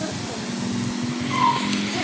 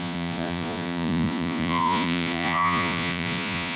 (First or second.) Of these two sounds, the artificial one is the second